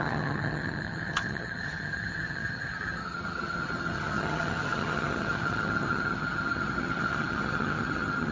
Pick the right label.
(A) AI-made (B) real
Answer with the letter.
A